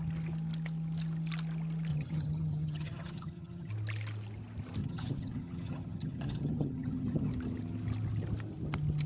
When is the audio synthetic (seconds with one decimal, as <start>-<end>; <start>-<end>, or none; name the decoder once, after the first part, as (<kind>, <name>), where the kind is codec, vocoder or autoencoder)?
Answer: 1.9-3.7 (vocoder, HiFi-GAN); 4.8-7.3